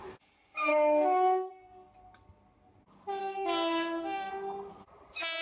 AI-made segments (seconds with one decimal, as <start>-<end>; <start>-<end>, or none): 0.7-1.5; 3.2-4.3